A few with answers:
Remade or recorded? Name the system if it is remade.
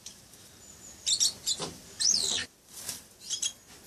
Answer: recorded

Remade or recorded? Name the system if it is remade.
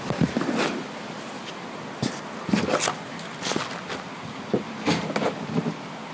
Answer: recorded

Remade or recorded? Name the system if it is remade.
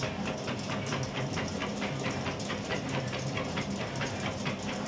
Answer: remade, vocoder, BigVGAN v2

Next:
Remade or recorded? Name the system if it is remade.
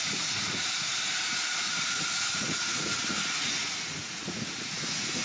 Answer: remade, vocoder, Vocos